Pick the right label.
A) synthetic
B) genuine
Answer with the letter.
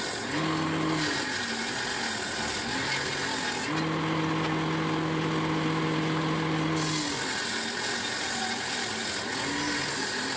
B